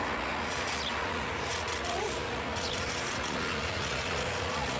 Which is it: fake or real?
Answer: fake